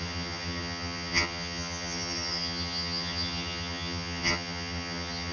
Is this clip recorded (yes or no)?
no